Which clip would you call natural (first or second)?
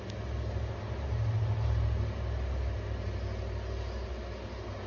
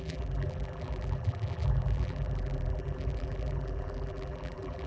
first